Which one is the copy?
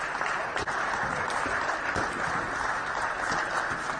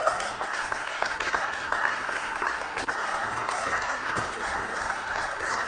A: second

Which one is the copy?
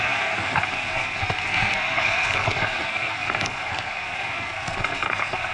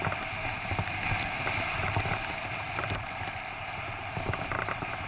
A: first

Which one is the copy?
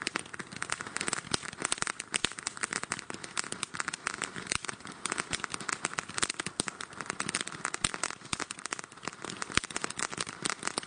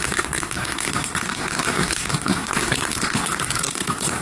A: second